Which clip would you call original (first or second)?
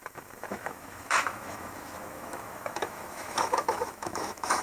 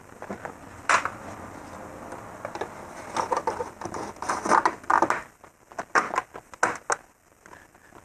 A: second